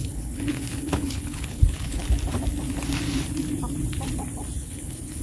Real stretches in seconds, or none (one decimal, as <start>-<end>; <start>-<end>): 2.0-4.6